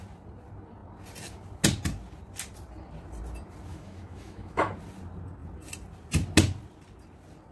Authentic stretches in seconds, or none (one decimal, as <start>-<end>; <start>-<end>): 0.0-3.7; 4.7-7.5